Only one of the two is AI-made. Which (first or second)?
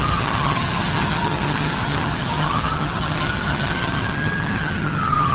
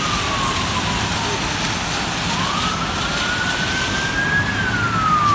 first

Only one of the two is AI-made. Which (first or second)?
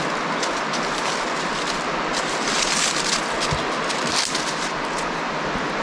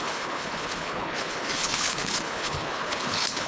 second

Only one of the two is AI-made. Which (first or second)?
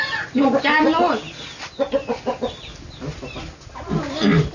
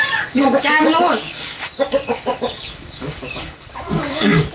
second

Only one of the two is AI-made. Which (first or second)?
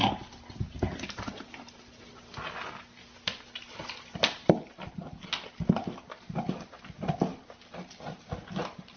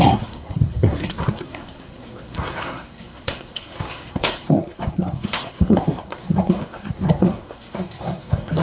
second